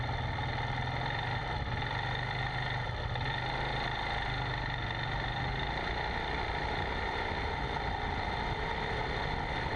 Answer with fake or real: real